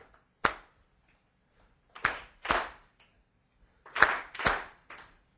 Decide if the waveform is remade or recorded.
remade